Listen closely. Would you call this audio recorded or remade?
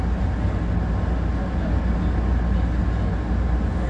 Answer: recorded